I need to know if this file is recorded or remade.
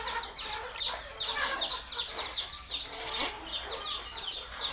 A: recorded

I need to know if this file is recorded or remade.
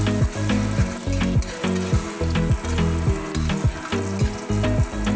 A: recorded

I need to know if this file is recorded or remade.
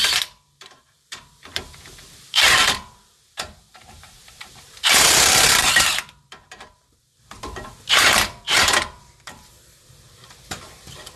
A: remade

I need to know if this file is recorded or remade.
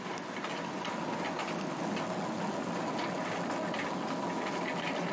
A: recorded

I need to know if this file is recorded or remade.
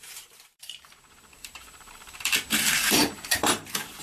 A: remade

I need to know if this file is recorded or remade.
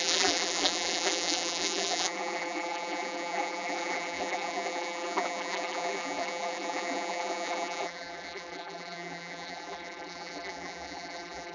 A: remade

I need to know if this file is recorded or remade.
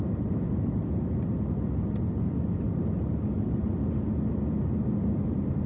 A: recorded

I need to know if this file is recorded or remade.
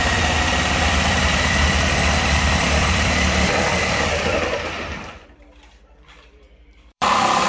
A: remade